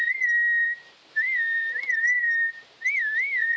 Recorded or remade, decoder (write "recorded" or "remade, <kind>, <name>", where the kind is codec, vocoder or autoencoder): remade, vocoder, BigVGAN v2